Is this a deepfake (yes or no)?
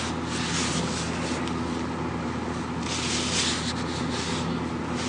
no